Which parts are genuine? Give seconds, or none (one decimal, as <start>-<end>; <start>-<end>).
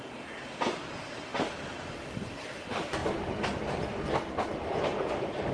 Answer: 0.0-5.5